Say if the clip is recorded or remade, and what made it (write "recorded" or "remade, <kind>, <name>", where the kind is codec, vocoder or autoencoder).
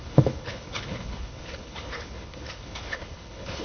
remade, codec, HILCodec